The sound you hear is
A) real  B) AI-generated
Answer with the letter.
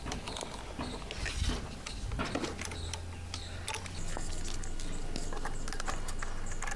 A